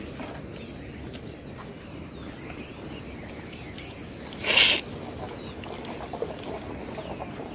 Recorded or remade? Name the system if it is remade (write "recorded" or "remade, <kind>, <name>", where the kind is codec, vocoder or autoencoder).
recorded